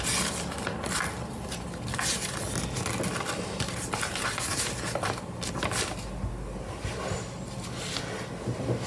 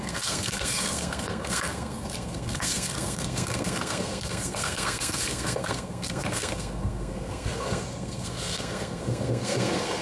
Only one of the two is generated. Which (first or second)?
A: second